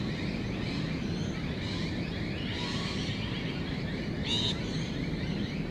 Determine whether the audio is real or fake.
real